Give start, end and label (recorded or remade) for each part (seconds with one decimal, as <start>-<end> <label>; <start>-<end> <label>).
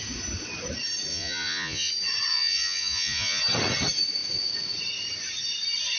0.0-1.1 recorded; 1.1-1.9 remade; 1.9-2.3 recorded; 2.3-3.4 remade; 3.4-6.0 recorded